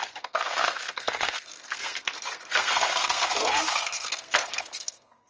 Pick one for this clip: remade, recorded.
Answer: remade